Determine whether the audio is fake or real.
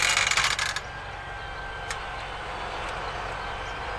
real